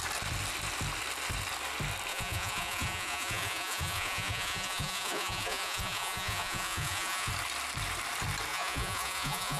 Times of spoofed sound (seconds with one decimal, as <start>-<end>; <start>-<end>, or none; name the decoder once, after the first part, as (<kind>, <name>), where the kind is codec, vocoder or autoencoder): 2.1-7.3 (vocoder, Vocos); 8.5-9.6